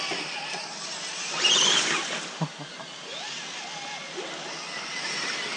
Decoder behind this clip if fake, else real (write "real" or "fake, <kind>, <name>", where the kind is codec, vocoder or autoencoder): real